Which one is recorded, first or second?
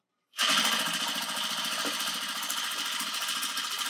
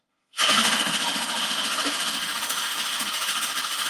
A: first